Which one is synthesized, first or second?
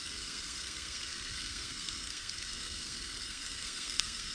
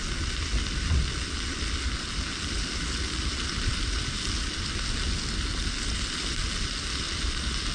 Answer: first